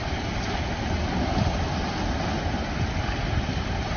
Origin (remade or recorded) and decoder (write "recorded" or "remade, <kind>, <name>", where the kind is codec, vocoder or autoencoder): recorded